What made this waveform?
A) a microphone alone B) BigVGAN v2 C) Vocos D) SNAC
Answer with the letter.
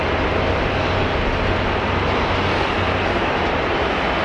A